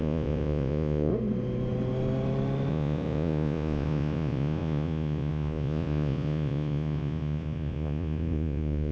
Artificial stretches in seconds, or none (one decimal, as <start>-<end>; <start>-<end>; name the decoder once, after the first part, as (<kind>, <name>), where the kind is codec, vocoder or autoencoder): 0.0-1.1 (vocoder, Vocos); 2.7-8.9

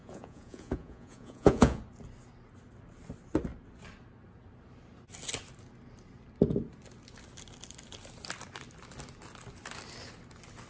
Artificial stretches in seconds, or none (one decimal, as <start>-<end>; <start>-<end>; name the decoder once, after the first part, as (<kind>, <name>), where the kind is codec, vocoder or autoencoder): 0.0-1.8 (vocoder, Vocos)

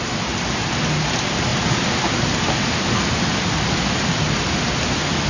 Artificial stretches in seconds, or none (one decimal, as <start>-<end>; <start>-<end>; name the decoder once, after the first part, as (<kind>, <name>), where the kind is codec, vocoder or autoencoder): none

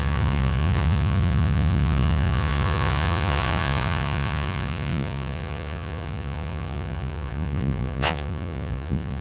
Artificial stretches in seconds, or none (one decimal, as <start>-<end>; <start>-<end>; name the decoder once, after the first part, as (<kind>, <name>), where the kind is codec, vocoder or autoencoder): 0.0-9.2 (vocoder, Vocos)

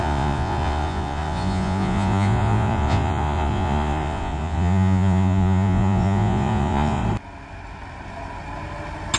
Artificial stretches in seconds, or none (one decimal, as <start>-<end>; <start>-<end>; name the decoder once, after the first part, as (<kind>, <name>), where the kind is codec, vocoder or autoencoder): 0.0-7.0 (vocoder, Vocos)

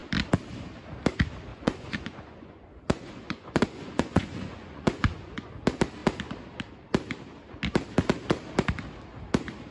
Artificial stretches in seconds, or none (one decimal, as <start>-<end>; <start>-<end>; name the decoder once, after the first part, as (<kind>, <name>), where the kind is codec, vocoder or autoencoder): 1.5-5.5 (vocoder, Vocos)